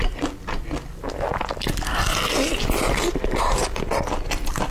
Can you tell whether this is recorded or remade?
recorded